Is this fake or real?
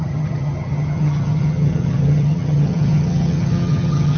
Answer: fake